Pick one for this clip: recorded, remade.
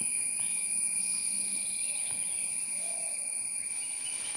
recorded